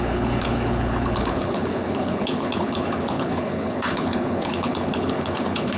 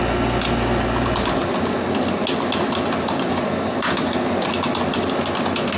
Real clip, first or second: second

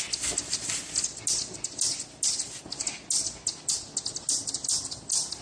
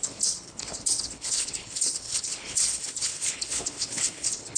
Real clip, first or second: first